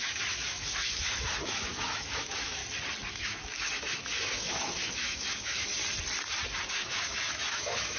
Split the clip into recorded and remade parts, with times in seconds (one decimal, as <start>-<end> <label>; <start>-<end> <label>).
0.0-2.6 remade; 2.6-3.1 recorded; 3.1-5.8 remade; 5.8-6.7 recorded; 6.7-8.0 remade